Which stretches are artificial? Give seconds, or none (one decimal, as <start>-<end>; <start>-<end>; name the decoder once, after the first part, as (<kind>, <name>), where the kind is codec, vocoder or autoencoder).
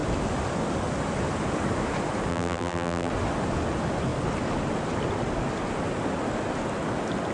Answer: 2.3-3.1 (vocoder, BigVGAN v2)